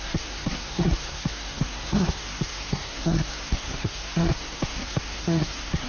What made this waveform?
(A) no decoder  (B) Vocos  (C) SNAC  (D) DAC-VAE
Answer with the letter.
C